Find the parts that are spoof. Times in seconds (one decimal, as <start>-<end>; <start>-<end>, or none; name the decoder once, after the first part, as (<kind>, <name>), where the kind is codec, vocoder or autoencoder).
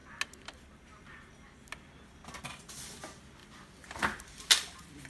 none